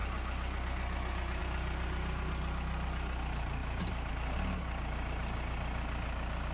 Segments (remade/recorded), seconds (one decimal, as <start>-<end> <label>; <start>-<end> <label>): 0.0-6.5 recorded